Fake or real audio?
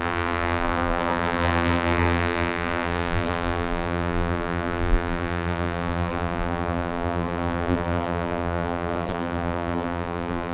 fake